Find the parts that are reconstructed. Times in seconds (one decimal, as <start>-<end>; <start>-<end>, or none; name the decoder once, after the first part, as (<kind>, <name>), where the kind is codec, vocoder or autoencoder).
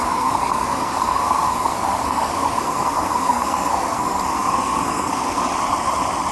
0.0-5.4 (codec, SNAC)